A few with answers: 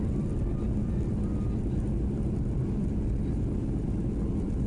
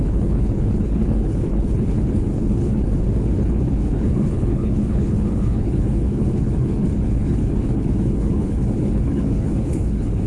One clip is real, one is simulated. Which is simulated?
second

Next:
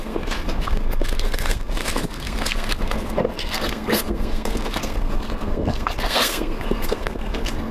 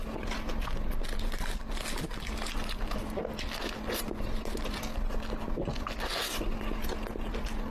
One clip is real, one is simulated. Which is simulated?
first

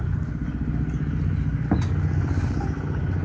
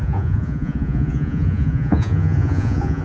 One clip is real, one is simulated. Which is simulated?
second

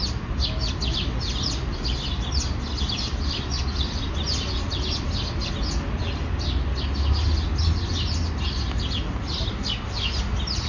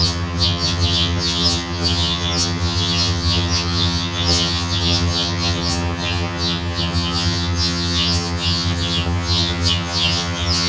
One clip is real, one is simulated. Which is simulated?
second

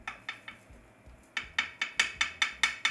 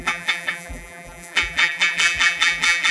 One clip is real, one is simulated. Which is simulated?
second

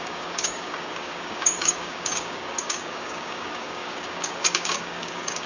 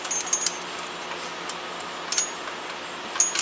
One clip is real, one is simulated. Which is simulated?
first